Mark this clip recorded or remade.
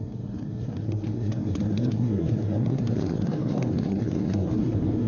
remade